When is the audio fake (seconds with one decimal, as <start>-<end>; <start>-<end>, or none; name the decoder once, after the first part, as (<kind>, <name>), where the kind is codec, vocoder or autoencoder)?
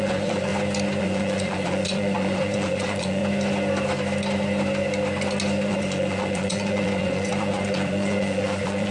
0.0-0.5 (vocoder, Vocos); 1.0-3.2; 5.7-8.9